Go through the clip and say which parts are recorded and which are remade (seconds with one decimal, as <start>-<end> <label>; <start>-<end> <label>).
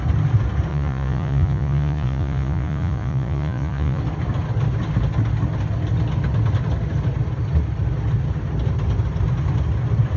0.0-0.7 recorded; 0.7-4.0 remade; 4.0-10.2 recorded